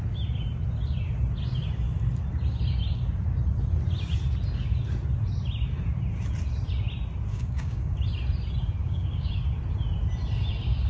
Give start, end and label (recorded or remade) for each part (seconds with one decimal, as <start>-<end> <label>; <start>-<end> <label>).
0.0-7.3 recorded; 7.3-7.9 remade; 7.9-8.8 recorded; 8.8-9.3 remade; 9.3-10.9 recorded